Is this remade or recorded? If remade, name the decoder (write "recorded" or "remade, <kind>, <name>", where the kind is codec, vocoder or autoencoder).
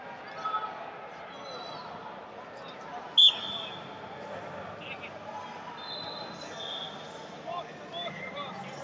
recorded